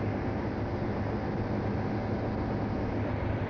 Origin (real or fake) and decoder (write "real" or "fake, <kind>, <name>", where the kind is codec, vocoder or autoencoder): real